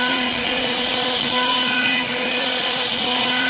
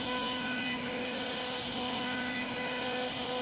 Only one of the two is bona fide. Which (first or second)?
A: second